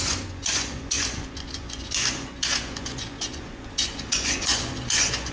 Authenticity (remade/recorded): remade